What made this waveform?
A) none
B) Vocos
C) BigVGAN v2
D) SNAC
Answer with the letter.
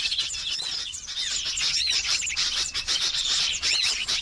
B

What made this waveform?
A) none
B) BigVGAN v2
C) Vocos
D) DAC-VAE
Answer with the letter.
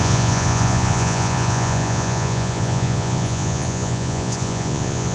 C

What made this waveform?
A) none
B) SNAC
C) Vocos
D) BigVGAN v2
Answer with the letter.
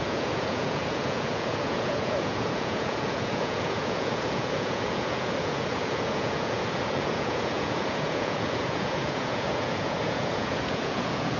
C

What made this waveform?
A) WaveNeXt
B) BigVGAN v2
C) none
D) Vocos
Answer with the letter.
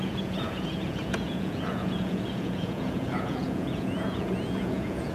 D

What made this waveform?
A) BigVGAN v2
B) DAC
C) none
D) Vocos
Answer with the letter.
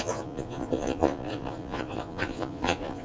D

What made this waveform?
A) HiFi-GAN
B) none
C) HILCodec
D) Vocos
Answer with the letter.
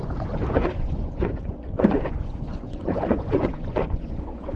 D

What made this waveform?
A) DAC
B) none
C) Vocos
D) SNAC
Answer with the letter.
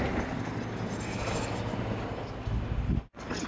B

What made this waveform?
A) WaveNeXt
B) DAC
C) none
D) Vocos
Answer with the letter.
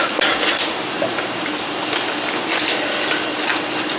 C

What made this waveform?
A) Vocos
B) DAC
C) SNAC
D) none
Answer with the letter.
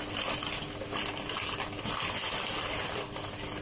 D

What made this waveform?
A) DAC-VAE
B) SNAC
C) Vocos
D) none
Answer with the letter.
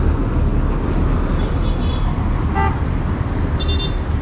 D